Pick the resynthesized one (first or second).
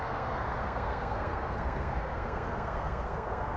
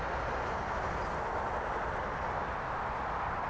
first